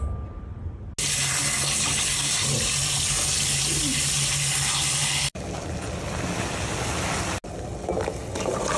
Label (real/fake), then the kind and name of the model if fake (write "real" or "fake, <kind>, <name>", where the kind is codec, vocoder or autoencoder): real